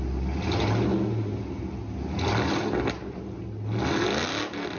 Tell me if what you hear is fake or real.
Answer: real